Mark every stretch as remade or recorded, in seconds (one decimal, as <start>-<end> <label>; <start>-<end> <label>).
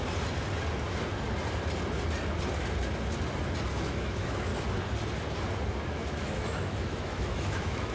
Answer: 0.0-3.7 recorded; 3.7-4.5 remade; 4.5-5.9 recorded; 5.9-7.9 remade